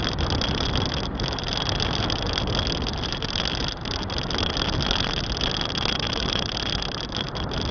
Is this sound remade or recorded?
recorded